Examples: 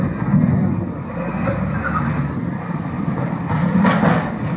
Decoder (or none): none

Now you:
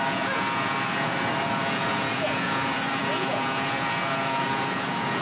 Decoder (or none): vocoder, Vocos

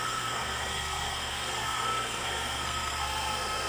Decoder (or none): codec, SNAC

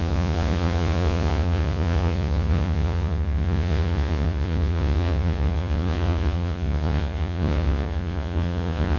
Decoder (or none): vocoder, Vocos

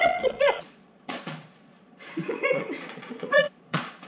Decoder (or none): vocoder, Vocos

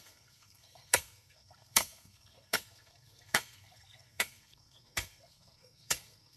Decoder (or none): codec, SNAC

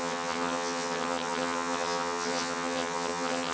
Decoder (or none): vocoder, HiFi-GAN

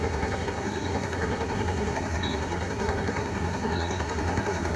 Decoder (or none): codec, SNAC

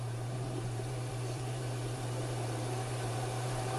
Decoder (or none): vocoder, BigVGAN v2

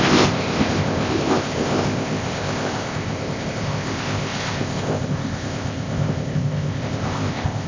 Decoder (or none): codec, ZipCodec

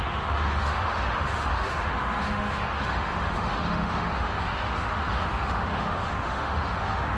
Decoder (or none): autoencoder, DAC-VAE